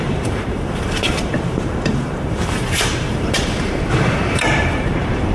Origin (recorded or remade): remade